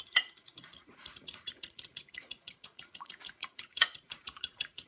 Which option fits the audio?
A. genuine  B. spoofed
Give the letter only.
B